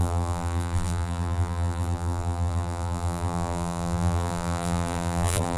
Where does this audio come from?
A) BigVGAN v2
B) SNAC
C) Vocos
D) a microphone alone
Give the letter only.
A